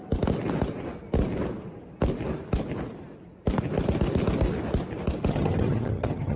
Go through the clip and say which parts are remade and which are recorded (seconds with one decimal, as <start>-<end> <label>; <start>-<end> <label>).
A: 0.0-5.3 recorded; 5.3-6.4 remade